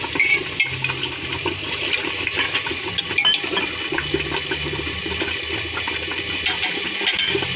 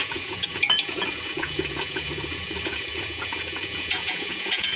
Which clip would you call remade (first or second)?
second